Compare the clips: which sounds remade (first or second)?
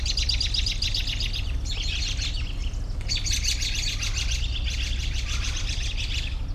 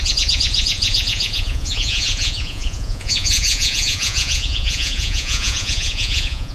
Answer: second